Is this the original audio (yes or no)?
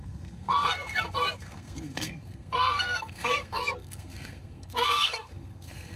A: no